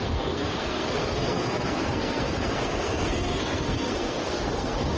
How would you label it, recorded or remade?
remade